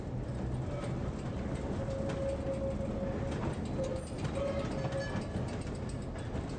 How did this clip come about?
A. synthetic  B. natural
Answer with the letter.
B